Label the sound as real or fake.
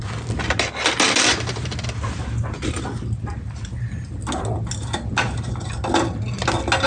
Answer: real